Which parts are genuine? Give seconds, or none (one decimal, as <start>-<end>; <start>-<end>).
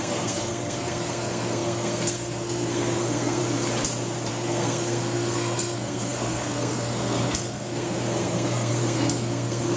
3.4-4.3